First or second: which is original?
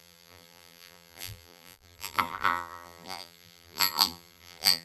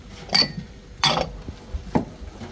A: second